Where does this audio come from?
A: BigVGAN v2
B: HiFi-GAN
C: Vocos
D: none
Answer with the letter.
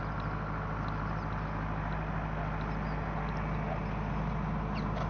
D